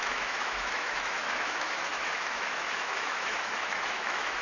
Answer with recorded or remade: remade